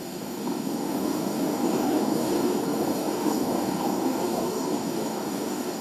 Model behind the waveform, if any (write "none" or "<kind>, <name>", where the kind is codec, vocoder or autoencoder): codec, DAC